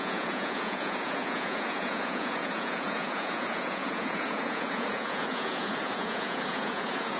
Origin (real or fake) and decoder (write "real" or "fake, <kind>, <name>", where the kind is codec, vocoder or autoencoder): fake, vocoder, Vocos